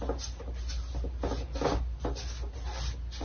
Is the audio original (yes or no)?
yes